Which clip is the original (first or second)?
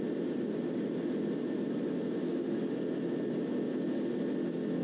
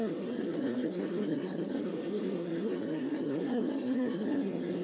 first